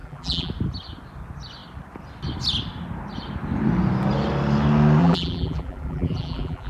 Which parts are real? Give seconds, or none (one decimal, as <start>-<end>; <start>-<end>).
0.5-5.0

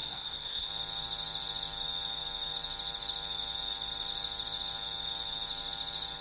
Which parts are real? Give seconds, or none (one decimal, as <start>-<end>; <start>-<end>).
0.7-6.2

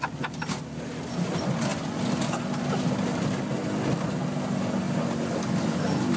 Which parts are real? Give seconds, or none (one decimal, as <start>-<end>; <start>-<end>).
0.0-6.2

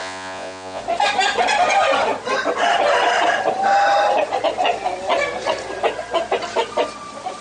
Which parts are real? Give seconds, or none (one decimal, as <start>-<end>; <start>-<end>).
0.8-7.4

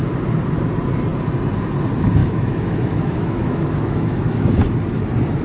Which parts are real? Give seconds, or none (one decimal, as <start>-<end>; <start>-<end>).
0.0-2.2; 4.5-5.4